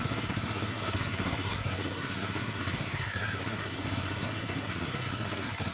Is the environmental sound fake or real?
fake